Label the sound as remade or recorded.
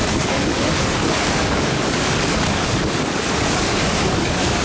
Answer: remade